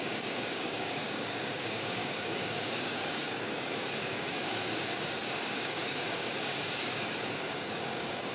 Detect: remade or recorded remade